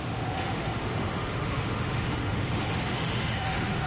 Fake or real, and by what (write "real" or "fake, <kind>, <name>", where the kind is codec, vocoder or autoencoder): fake, autoencoder, DAC-VAE